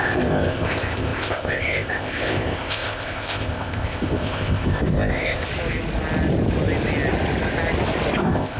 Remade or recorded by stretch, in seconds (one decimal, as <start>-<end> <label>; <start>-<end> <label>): 0.0-5.5 remade; 5.5-8.2 recorded; 8.2-8.6 remade